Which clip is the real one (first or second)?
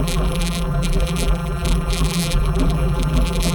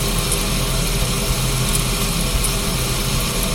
second